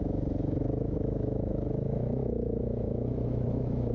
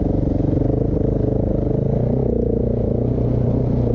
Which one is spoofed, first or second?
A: first